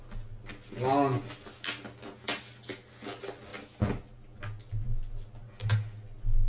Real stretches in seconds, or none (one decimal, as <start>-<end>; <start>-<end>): 0.0-3.5; 4.4-6.5